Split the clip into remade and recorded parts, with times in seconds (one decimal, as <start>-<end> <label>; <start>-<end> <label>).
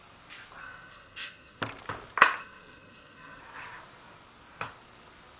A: 0.0-0.6 recorded; 0.6-1.6 remade; 1.6-2.4 recorded; 2.4-3.4 remade; 3.4-5.4 recorded